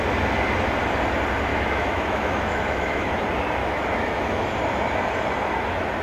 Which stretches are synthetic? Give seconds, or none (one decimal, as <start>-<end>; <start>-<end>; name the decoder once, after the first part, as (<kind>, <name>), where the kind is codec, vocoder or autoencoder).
1.5-3.1 (autoencoder, DAC-VAE); 3.6-4.4